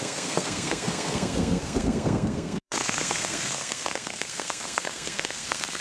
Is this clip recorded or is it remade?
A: remade